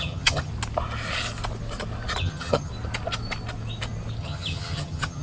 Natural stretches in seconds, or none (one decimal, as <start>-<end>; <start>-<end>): 0.5-2.2; 2.7-4.2